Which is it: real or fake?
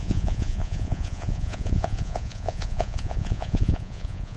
fake